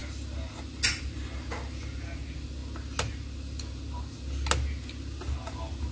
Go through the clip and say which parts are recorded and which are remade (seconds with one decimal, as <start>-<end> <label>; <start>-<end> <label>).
0.0-5.9 recorded